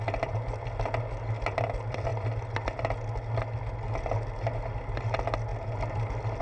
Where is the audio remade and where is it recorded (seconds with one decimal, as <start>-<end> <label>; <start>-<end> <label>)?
0.0-6.4 recorded